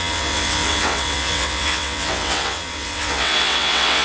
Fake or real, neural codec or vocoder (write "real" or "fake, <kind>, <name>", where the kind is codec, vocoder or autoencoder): fake, vocoder, WaveNeXt